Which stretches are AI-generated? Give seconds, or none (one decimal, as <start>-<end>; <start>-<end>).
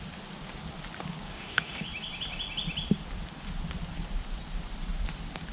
1.3-1.8